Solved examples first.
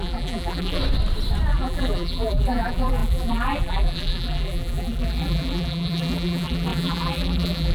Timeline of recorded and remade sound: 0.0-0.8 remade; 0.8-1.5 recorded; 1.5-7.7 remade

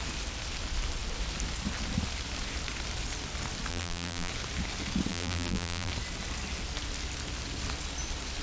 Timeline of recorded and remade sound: 0.0-3.7 recorded; 3.7-4.3 remade; 4.3-5.1 recorded; 5.1-5.9 remade; 5.9-8.4 recorded

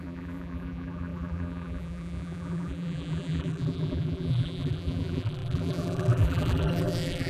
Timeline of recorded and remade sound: 0.0-7.3 remade

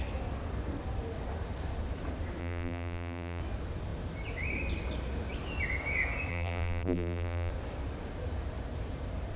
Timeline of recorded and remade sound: 0.0-2.4 recorded; 2.4-3.4 remade; 3.4-6.3 recorded; 6.3-7.5 remade; 7.5-9.4 recorded